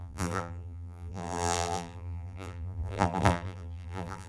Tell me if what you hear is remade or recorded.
remade